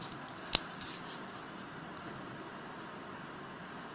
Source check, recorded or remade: recorded